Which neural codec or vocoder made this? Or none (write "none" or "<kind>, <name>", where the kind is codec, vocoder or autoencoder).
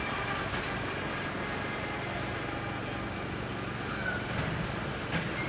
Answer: none